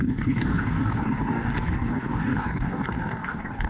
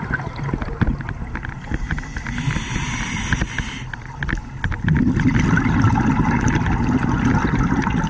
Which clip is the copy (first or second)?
first